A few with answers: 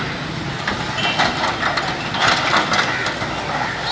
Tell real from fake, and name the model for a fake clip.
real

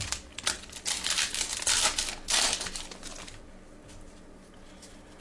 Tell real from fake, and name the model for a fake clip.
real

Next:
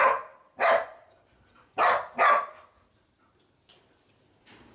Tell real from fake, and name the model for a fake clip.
real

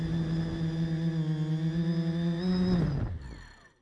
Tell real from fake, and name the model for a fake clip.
real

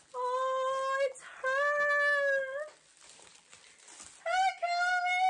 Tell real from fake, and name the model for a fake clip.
real